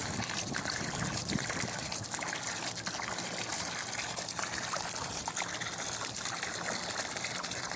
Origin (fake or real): real